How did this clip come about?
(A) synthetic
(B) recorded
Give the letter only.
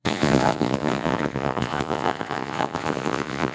A